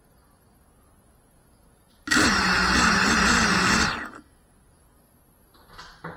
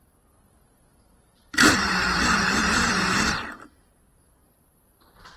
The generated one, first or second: second